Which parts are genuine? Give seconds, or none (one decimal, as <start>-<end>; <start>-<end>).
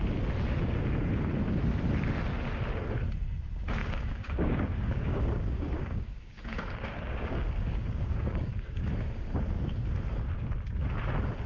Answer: 0.0-3.8; 8.9-11.5